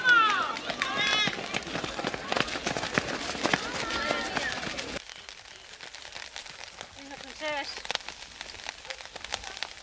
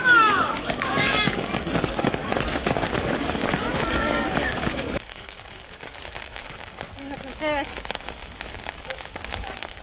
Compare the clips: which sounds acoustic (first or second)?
first